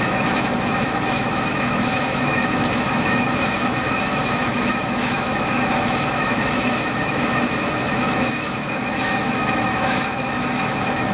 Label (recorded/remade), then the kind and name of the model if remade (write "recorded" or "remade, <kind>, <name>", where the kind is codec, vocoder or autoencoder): remade, autoencoder, DAC-VAE